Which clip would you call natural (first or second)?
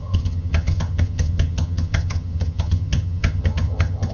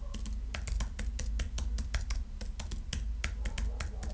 second